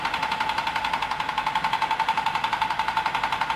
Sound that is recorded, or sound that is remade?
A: recorded